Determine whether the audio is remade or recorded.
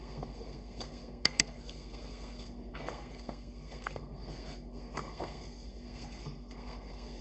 remade